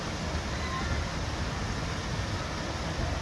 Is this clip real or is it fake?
real